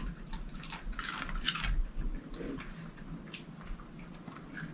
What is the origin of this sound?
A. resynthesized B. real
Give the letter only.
B